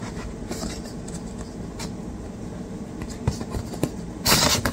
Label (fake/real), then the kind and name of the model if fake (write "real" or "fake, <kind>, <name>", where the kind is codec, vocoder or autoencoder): real